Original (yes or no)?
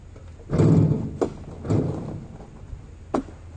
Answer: yes